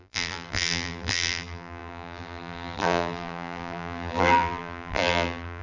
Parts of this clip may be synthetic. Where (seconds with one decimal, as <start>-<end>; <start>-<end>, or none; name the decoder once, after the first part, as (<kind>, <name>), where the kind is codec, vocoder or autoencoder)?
0.0-5.6 (vocoder, BigVGAN v2)